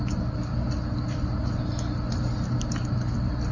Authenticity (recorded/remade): recorded